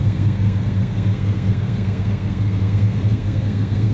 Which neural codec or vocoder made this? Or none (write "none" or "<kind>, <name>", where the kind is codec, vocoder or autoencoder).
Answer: codec, SNAC